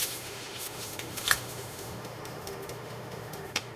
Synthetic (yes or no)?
yes